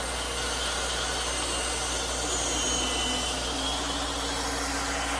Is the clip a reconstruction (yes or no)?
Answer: no